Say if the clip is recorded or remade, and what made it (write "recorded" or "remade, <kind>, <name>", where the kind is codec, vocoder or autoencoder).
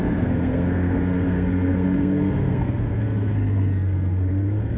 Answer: remade, codec, SNAC